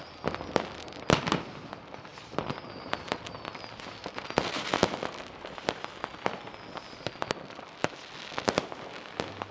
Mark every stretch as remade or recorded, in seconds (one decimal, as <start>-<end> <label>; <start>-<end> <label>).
0.0-4.0 recorded; 4.0-4.7 remade; 4.7-9.5 recorded